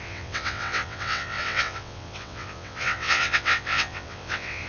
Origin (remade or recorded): remade